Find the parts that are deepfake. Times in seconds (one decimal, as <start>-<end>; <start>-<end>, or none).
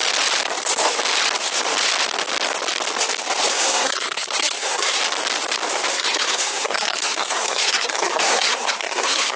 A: 3.5-5.0; 5.9-9.4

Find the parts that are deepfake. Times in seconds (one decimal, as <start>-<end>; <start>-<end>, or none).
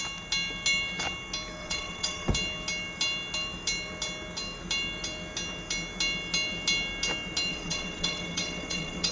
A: 1.6-2.3; 7.5-9.1